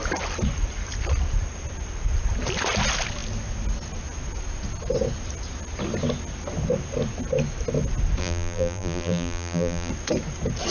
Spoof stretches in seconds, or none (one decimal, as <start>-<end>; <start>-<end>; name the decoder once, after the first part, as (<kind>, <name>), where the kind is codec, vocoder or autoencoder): 8.2-9.9 (vocoder, BigVGAN v2)